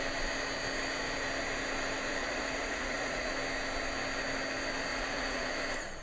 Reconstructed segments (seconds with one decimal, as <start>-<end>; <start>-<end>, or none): 2.2-3.3; 4.9-5.5